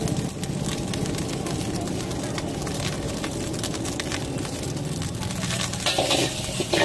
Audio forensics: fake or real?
real